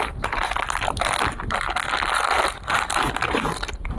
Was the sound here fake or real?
real